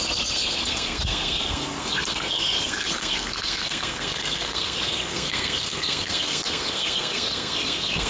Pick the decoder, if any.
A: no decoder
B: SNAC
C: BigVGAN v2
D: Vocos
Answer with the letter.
B